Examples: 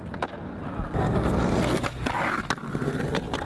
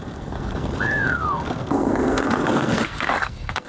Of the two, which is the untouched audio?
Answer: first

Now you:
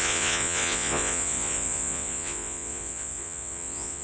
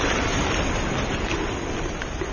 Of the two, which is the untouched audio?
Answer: second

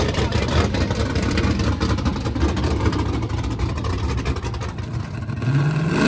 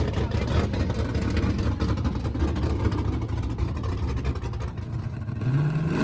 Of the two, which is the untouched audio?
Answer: second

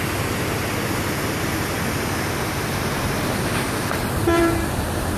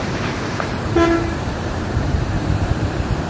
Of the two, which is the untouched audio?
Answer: first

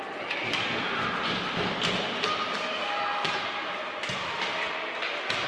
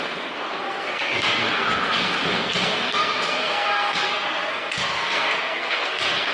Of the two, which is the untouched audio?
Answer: first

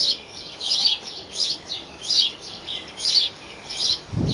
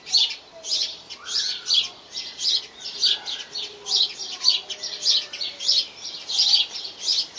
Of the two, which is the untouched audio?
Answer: second